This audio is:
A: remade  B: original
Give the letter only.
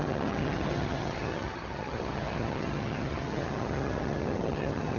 A